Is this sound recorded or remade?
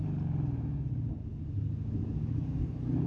recorded